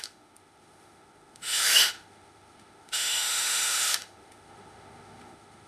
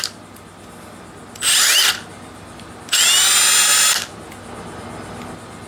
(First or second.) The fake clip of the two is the first